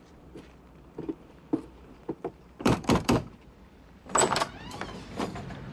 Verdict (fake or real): fake